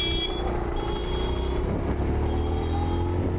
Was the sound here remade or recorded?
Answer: recorded